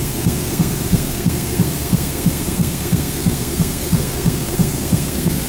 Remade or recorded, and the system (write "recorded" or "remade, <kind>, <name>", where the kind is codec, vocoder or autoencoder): remade, codec, SNAC